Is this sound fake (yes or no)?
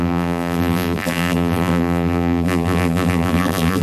yes